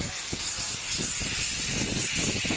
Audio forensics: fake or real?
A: real